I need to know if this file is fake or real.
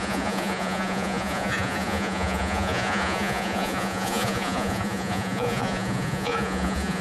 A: fake